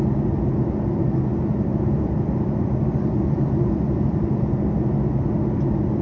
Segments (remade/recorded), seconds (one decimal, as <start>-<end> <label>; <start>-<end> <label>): 0.0-1.3 recorded; 1.3-4.9 remade; 4.9-6.0 recorded